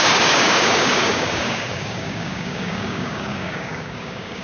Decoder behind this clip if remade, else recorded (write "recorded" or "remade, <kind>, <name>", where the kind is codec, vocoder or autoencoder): remade, codec, DAC